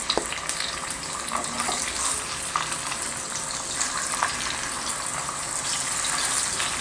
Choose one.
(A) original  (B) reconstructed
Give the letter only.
A